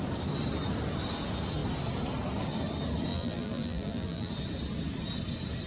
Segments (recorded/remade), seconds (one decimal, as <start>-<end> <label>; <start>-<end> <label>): 0.0-3.1 recorded; 3.1-4.3 remade; 4.3-5.7 recorded